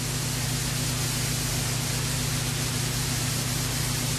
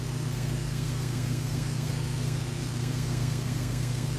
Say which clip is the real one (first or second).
first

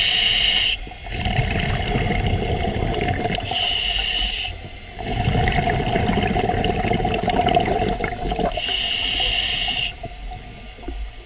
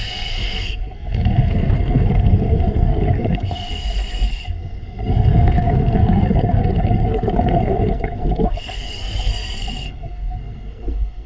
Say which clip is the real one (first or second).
first